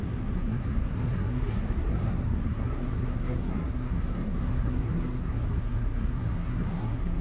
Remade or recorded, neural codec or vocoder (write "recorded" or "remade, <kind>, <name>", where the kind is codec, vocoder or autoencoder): remade, codec, SNAC